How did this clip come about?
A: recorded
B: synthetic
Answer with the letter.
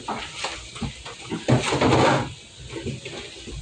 A